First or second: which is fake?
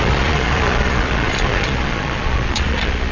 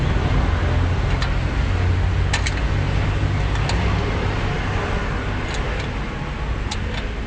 first